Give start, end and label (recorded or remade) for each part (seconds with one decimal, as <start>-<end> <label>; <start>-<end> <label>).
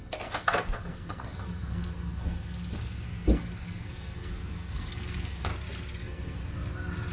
0.0-5.5 remade; 5.5-6.0 recorded; 6.0-6.4 remade; 6.4-7.1 recorded